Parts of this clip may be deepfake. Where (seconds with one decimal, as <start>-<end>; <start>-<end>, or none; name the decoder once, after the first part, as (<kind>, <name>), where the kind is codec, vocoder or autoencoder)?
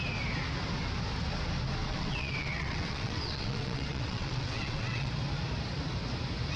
1.8-5.1 (vocoder, WaveNeXt)